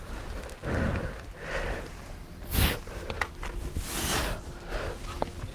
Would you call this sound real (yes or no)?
yes